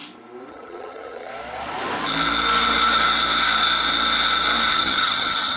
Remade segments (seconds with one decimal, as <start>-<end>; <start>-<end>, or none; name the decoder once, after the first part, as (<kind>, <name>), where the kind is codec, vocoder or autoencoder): 0.5-1.3 (vocoder, HiFi-GAN); 4.7-5.6